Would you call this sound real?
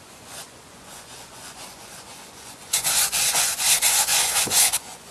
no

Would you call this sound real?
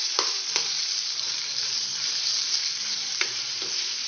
no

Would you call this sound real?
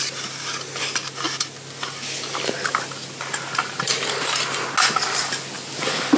yes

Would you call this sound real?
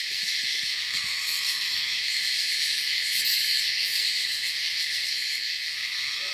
no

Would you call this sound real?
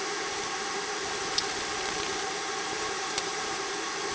no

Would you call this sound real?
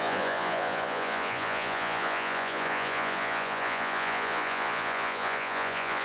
no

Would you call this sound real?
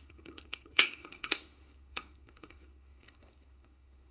no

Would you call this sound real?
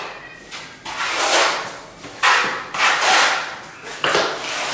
yes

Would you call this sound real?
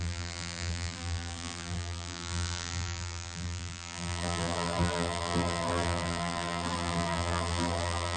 no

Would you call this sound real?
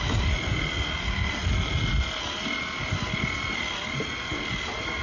yes